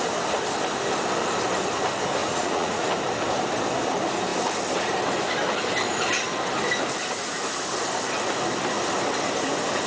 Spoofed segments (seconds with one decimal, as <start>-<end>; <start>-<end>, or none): 2.2-2.9